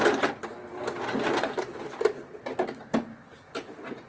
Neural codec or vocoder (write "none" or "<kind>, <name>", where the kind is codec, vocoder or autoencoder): none